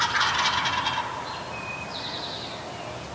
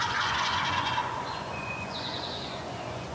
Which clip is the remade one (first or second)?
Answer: second